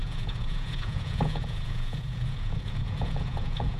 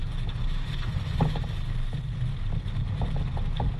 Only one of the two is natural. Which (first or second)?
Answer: second